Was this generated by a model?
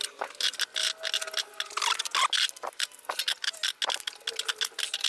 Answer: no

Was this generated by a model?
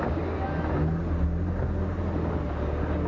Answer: no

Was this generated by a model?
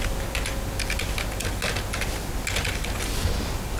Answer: no